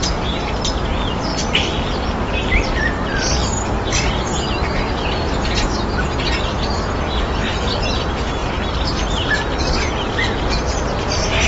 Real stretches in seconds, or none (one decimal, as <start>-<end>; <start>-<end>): 0.0-11.5